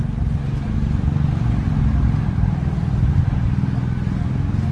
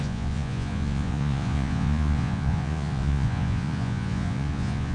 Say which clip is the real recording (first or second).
first